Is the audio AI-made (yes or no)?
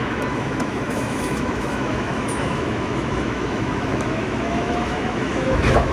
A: yes